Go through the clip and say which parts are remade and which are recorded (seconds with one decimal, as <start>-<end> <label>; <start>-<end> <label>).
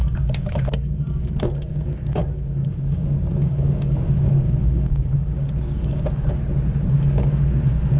0.0-6.4 remade; 6.4-6.9 recorded; 6.9-8.0 remade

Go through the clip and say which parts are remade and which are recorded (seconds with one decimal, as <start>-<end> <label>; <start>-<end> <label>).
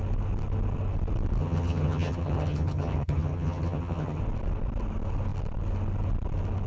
0.0-1.4 recorded; 1.4-4.2 remade; 4.2-6.7 recorded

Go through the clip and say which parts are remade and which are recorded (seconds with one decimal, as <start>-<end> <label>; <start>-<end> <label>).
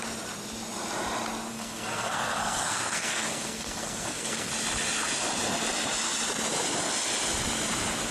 0.0-1.5 recorded; 1.5-4.5 remade; 4.5-8.1 recorded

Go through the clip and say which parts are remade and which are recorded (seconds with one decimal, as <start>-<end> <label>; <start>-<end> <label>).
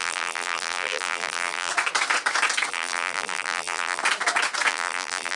0.0-1.7 remade; 1.7-2.7 recorded; 2.7-4.0 remade; 4.0-4.7 recorded; 4.7-5.4 remade